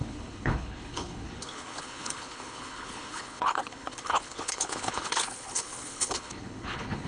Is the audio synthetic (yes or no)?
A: yes